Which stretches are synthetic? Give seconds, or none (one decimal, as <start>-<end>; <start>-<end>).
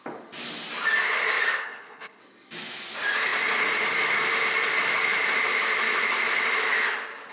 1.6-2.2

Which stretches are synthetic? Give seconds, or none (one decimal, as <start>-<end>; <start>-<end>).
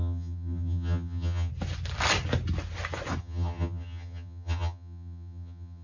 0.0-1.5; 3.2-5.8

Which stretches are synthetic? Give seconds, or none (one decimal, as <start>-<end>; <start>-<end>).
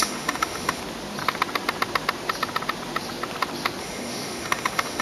0.0-0.8; 3.8-5.0